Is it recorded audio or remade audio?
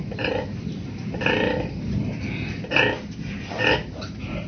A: recorded